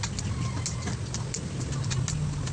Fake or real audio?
real